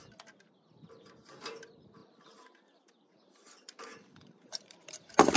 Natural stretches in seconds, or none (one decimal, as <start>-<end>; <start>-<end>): 0.0-2.0